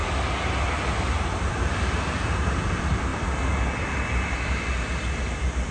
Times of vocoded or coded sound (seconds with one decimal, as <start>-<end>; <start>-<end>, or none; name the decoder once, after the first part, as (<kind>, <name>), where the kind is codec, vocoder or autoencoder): 0.7-3.1 (vocoder, BigVGAN v2); 3.8-5.7